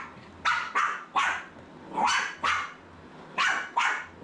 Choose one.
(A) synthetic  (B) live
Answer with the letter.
B